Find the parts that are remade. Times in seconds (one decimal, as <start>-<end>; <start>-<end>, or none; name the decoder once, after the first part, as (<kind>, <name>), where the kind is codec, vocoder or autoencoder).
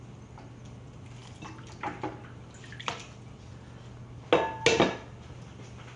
none